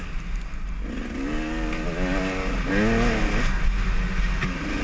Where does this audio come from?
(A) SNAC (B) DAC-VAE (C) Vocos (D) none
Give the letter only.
D